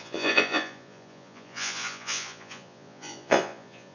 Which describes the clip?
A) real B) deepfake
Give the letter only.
B